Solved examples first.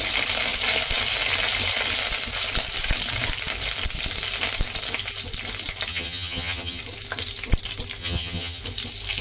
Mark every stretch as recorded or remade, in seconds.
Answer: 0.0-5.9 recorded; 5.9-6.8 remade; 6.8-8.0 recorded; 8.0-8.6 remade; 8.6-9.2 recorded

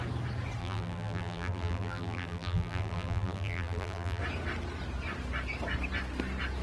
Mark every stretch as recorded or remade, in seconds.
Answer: 0.0-0.6 recorded; 0.6-4.2 remade; 4.2-6.6 recorded

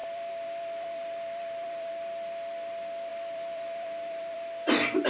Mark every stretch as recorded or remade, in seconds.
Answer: 0.0-1.9 remade; 1.9-3.1 recorded; 3.1-5.1 remade

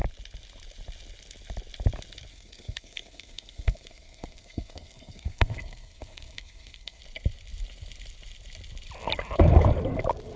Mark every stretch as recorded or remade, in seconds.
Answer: 0.0-2.3 recorded; 2.3-7.0 remade; 7.0-10.4 recorded

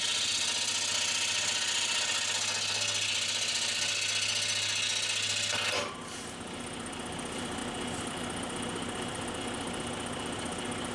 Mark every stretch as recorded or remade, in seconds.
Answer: 0.0-10.9 recorded

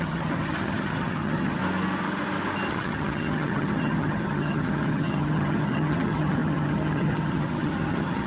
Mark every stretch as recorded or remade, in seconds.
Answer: 0.0-1.6 remade; 1.6-2.7 recorded; 2.7-8.3 remade